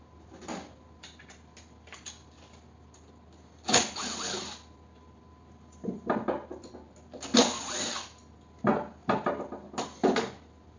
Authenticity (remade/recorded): recorded